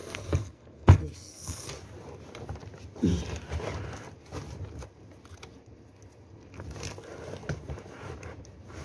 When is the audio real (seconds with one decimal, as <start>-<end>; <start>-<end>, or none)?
1.7-8.8